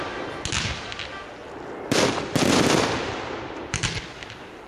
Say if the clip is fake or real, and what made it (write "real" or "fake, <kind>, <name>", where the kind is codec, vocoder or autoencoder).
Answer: real